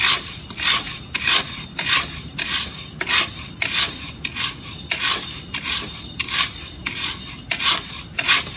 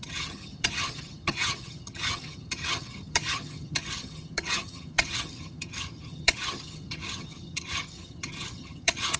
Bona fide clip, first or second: first